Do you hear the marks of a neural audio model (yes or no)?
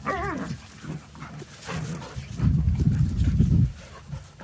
no